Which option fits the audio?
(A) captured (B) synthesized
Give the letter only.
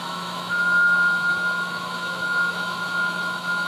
B